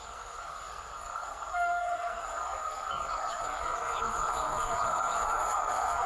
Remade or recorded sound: remade